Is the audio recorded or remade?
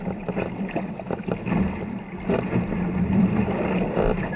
recorded